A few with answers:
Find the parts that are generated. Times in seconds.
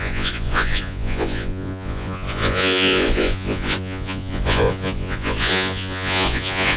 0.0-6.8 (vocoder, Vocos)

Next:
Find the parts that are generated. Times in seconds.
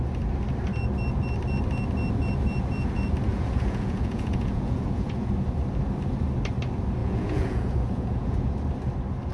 3.3-5.3 (vocoder, Vocos); 7.0-8.5